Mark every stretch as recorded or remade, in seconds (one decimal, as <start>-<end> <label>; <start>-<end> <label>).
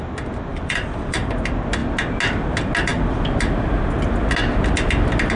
0.0-0.5 recorded; 0.5-1.3 remade; 1.3-5.4 recorded